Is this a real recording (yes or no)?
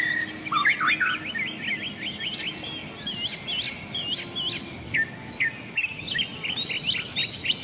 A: yes